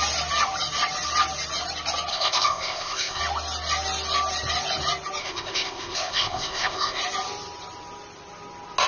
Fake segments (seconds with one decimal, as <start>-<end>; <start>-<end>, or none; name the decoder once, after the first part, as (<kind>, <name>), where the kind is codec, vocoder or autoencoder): 2.1-3.2 (codec, ZipCodec); 5.2-7.0